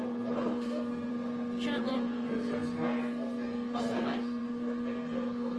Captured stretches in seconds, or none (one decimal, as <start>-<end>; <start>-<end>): 1.1-1.8